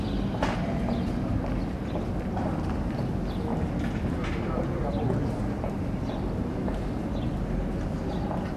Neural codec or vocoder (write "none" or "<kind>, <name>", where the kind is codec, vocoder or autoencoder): none